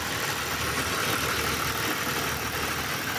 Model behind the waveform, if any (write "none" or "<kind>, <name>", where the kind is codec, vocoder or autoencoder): none